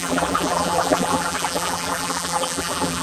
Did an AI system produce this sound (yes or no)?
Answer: yes